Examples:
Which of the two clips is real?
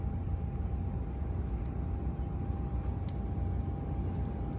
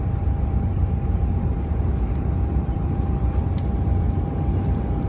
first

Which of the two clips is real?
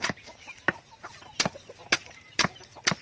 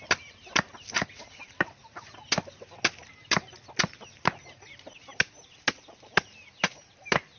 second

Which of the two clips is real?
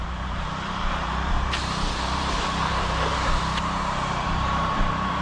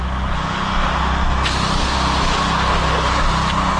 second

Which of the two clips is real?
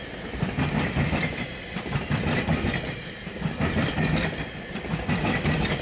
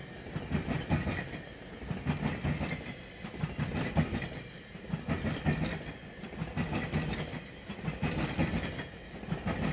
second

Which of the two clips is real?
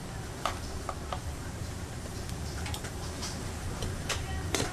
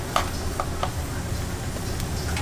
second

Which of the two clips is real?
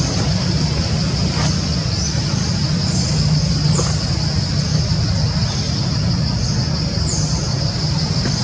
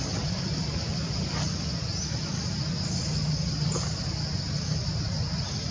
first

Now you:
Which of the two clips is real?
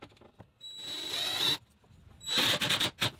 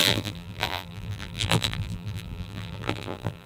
first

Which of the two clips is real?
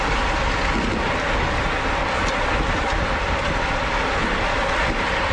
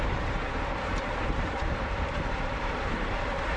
first